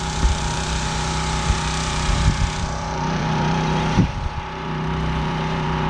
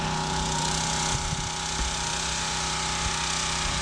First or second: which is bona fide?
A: second